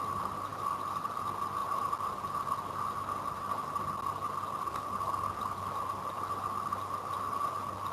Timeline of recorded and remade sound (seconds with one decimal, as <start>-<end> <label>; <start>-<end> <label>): 0.0-7.9 recorded